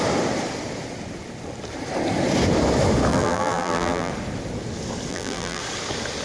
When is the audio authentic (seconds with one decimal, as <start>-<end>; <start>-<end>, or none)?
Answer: 0.0-3.1; 4.1-5.1; 5.6-6.2